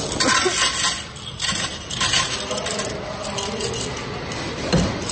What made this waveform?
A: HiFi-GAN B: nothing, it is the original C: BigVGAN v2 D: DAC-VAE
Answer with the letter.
B